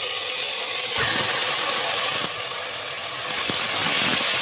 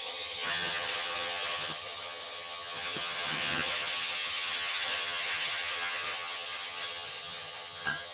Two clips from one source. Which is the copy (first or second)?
second